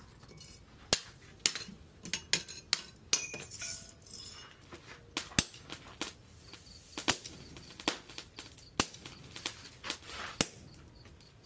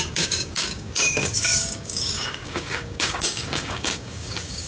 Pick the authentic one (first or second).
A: first